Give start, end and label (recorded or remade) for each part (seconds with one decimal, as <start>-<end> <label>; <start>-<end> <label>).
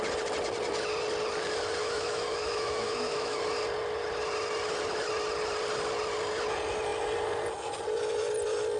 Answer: 0.0-1.8 recorded; 1.8-3.4 remade; 3.4-8.8 recorded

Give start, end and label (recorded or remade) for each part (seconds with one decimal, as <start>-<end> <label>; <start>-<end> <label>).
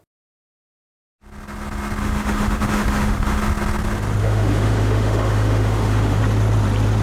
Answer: 0.0-2.0 recorded; 2.0-3.4 remade; 3.4-4.2 recorded; 4.2-6.2 remade; 6.2-7.0 recorded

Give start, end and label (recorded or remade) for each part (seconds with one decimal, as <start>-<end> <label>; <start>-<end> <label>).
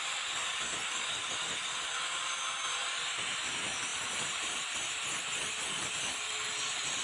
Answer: 0.0-7.0 recorded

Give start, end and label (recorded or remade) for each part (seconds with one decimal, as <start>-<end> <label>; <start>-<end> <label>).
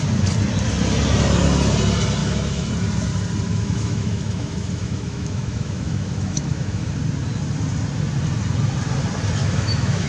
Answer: 0.0-2.2 recorded; 2.2-2.7 remade; 2.7-3.5 recorded; 3.5-6.9 remade; 6.9-9.4 recorded; 9.4-10.1 remade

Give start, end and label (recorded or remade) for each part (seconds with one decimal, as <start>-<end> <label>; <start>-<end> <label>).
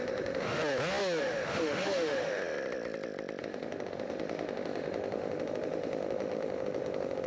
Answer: 0.0-0.6 remade; 0.6-1.2 recorded; 1.2-2.4 remade; 2.4-3.4 recorded; 3.4-7.3 remade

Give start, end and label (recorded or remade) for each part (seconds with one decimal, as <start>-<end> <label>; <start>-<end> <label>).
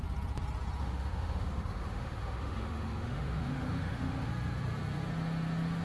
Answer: 0.0-0.8 recorded; 0.8-4.3 remade; 4.3-5.8 recorded